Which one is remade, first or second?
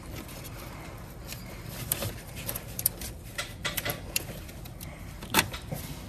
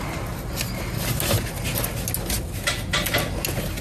first